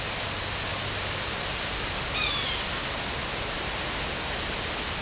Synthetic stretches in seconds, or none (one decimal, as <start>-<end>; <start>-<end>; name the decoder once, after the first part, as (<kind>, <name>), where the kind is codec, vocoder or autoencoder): none

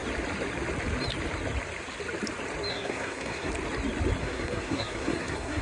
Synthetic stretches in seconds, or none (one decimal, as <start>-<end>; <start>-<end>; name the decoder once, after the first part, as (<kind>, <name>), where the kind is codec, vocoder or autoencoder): 2.7-3.5 (codec, SNAC); 4.2-5.6

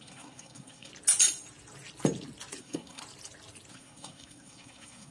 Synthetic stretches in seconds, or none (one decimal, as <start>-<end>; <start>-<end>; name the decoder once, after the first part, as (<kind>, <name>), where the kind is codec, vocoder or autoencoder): 0.0-0.9 (codec, SNAC); 2.6-3.0; 3.7-5.1

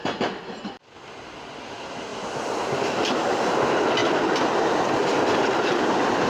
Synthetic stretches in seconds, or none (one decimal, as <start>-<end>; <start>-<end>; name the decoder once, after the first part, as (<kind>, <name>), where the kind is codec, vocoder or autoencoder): none

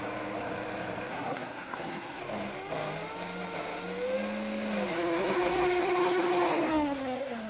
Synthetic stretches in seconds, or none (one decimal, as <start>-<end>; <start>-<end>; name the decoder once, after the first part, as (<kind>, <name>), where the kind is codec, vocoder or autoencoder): 1.1-2.2 (codec, SNAC); 4.9-7.5

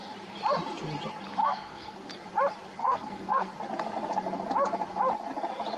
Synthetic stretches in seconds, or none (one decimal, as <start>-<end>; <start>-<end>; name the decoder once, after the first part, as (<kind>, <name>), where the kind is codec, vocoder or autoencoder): 1.4-2.1 (codec, SNAC); 2.8-3.5